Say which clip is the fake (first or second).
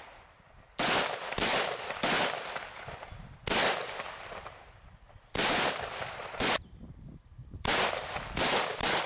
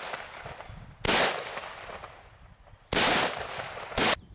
first